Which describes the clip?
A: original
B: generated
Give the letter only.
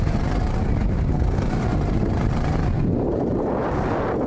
A